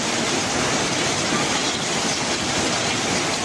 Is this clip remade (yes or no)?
no